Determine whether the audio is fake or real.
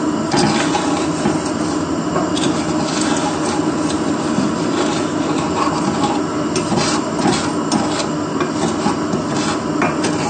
real